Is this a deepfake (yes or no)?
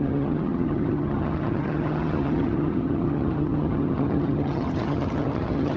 yes